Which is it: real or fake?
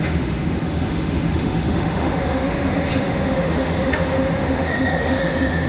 fake